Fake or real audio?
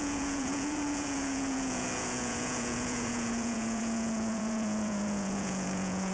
fake